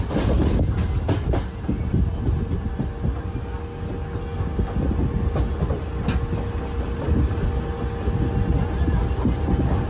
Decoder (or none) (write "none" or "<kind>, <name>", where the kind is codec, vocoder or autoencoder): none